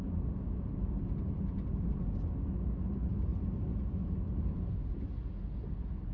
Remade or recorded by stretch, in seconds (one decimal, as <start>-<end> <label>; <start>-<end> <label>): 0.0-6.1 recorded